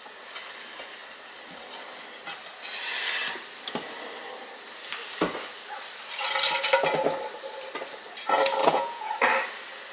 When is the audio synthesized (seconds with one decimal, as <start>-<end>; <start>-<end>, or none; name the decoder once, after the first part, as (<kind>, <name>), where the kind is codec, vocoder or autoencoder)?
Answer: 8.6-9.1 (vocoder, Vocos)